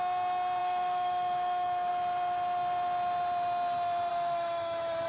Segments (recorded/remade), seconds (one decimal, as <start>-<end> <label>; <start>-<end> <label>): 0.0-0.6 recorded; 0.6-1.9 remade; 1.9-4.1 recorded; 4.1-5.1 remade